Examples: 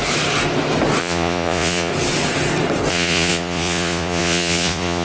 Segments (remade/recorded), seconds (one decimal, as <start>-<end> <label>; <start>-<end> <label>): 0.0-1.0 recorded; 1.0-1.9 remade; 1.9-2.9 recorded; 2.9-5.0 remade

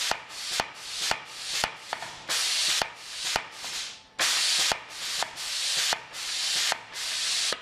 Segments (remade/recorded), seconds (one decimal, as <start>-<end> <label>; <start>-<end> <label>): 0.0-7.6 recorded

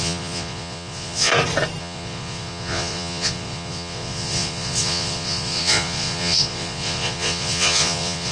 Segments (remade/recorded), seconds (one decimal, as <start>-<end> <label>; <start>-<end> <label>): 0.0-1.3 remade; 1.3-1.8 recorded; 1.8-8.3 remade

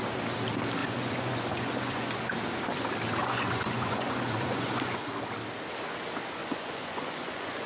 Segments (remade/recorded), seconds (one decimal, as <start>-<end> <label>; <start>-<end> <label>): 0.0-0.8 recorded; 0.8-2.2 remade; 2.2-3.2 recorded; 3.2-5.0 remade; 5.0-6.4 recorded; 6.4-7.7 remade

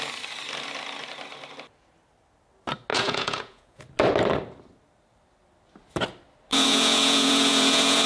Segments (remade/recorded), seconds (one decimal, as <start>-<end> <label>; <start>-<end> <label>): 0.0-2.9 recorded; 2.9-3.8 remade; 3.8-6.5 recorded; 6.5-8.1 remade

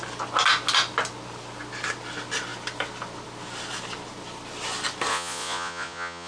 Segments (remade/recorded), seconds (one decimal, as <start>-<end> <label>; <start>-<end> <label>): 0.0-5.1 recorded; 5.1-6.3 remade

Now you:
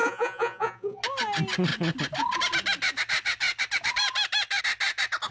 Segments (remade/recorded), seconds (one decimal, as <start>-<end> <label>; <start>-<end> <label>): 0.0-1.0 remade; 1.0-5.3 recorded